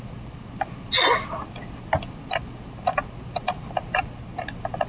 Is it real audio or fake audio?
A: real